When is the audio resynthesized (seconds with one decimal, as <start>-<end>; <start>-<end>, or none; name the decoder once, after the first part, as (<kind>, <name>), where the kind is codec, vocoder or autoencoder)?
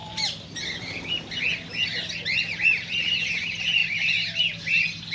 none